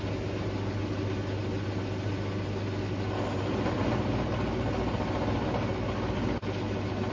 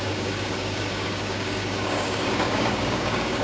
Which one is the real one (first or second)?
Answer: first